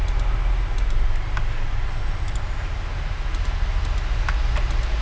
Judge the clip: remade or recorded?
recorded